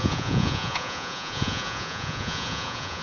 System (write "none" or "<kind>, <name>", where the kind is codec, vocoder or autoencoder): vocoder, Vocos